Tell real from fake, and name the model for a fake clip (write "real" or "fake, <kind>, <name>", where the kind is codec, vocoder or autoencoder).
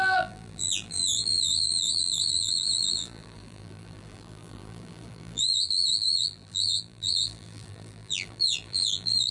fake, vocoder, BigVGAN v2